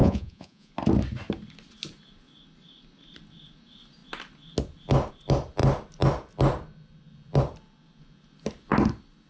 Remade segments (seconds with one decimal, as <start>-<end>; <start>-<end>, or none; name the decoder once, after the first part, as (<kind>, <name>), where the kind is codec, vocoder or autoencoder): 0.0-0.7 (vocoder, Vocos)